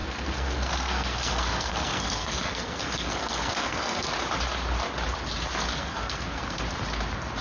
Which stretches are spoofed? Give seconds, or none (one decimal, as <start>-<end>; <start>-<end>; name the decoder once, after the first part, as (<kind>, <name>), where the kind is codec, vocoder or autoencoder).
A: 0.0-4.1 (codec, SNAC); 5.7-6.6